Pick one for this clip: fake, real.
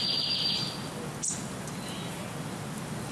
real